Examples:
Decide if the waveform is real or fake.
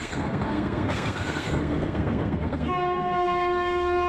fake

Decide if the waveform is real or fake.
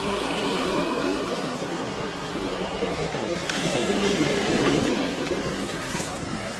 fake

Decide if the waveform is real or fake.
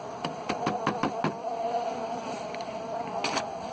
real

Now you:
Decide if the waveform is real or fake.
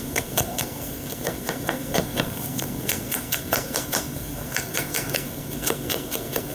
fake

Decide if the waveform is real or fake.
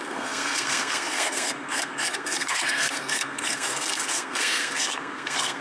fake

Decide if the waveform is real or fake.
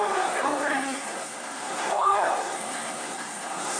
fake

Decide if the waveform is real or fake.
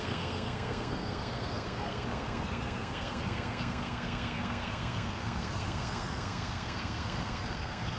fake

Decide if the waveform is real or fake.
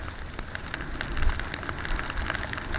real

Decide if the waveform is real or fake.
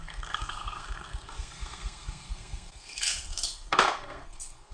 fake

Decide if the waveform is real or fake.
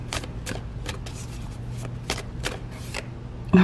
real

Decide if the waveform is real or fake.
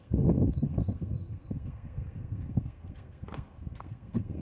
fake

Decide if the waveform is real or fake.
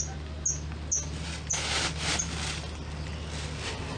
real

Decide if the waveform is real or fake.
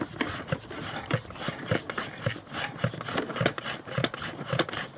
real